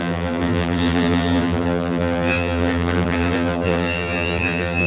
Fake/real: fake